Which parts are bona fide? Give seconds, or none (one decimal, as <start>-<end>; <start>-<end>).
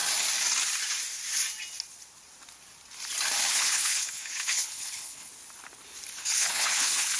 0.0-3.5; 5.3-6.2